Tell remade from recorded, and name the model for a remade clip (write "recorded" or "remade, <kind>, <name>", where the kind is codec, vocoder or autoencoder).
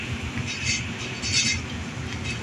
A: recorded